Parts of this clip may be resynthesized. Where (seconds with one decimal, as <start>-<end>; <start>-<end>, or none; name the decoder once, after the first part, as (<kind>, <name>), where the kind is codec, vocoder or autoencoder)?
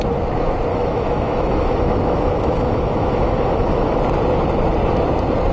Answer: 0.7-4.0 (autoencoder, DAC-VAE)